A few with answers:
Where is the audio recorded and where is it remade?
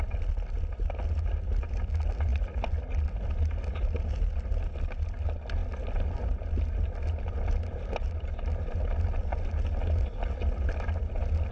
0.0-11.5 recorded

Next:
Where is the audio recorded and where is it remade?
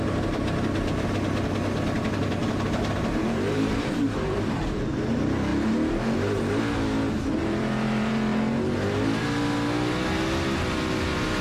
0.0-2.4 recorded; 2.4-4.5 remade; 4.5-5.5 recorded; 5.5-6.6 remade; 6.6-7.4 recorded; 7.4-9.2 remade; 9.2-11.4 recorded